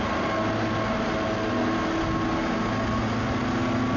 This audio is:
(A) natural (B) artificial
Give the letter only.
A